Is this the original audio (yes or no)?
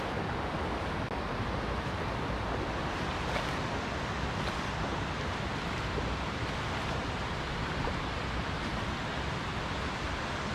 yes